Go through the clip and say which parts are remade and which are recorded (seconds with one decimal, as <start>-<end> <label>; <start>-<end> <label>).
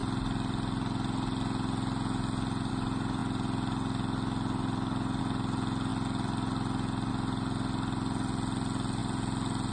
0.0-9.7 recorded